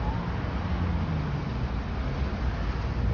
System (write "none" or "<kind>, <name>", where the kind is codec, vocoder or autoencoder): none